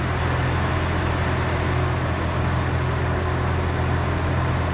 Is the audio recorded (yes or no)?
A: yes